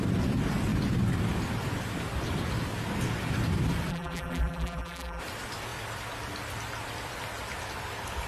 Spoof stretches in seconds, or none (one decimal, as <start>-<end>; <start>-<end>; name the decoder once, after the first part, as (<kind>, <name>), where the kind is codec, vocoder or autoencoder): 3.9-5.2 (vocoder, BigVGAN v2)